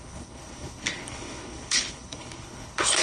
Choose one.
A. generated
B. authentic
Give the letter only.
A